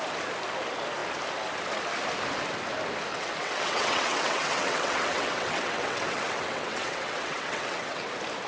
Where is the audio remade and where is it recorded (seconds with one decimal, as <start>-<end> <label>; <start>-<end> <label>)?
0.0-3.1 recorded; 3.1-8.1 remade; 8.1-8.5 recorded